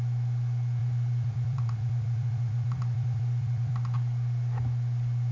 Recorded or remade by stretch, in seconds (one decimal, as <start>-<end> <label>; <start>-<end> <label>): 0.0-0.8 recorded; 0.8-3.7 remade; 3.7-5.3 recorded